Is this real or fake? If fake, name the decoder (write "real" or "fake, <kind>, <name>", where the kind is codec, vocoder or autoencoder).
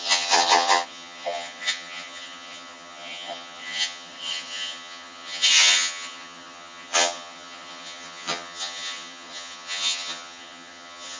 fake, vocoder, HiFi-GAN